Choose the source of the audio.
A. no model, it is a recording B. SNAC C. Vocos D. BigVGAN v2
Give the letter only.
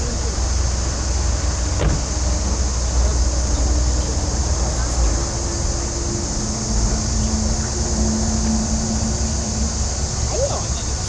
A